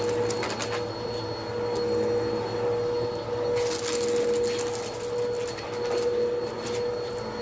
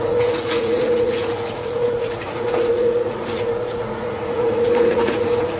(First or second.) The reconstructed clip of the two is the second